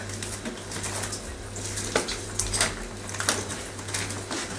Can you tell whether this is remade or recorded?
recorded